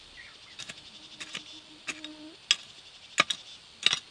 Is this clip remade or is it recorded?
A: recorded